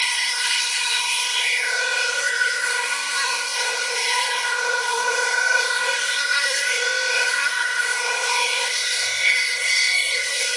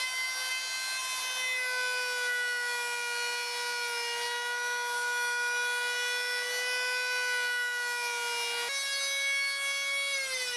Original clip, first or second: second